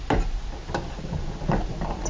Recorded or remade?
recorded